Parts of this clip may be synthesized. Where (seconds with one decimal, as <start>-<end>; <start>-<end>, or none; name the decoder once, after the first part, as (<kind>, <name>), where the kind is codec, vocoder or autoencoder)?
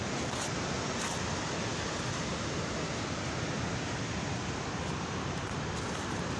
none